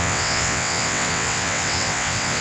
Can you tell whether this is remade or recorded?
remade